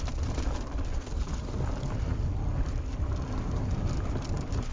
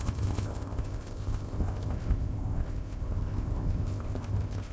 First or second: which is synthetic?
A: second